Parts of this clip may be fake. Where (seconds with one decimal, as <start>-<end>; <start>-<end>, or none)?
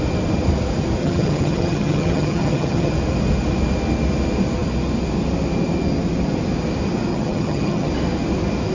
1.0-2.9; 7.1-7.9